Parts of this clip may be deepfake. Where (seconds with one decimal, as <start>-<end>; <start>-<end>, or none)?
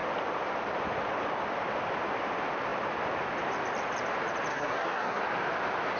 4.5-5.2